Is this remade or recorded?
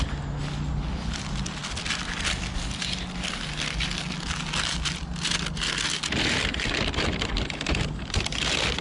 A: recorded